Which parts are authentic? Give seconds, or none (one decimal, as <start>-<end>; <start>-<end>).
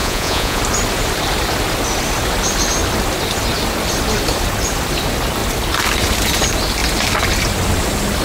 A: 0.6-8.2